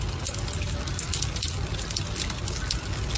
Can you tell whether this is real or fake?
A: real